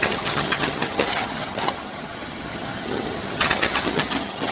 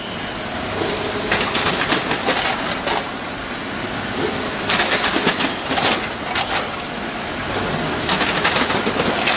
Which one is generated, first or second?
first